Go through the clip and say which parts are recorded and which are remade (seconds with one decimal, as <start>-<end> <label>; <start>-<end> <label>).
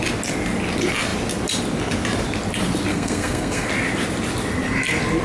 0.0-2.9 recorded; 2.9-3.7 remade; 3.7-5.2 recorded